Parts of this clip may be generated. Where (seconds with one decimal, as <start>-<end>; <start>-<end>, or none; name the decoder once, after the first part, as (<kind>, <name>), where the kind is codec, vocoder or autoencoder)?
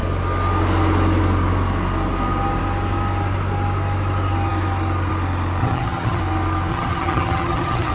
5.6-6.2 (vocoder, HiFi-GAN); 6.7-7.9